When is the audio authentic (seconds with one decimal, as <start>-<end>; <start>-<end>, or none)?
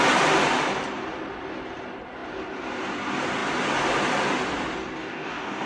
0.0-5.0